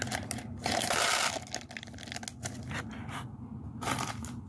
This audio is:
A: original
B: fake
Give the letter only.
A